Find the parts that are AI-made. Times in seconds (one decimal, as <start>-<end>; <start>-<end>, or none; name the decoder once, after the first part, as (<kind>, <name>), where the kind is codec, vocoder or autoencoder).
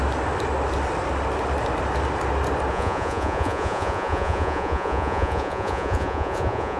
2.7-6.8 (vocoder, Vocos)